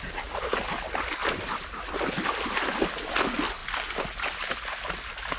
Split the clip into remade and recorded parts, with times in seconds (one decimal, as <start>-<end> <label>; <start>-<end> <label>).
0.0-5.4 recorded